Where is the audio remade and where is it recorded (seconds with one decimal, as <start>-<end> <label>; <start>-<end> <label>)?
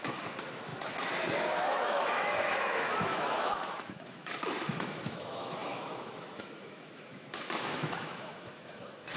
0.0-9.2 remade